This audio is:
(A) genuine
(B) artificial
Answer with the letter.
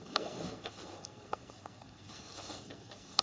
B